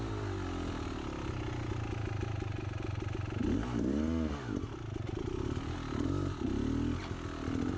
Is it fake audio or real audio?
real